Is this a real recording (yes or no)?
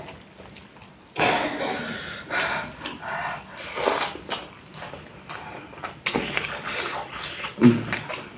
yes